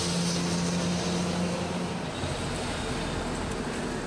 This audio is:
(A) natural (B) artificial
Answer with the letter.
A